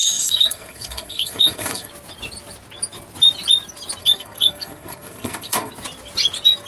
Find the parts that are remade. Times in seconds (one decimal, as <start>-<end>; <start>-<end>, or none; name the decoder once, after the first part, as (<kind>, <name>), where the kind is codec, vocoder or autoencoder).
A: 0.0-1.9 (codec, SNAC); 4.0-5.7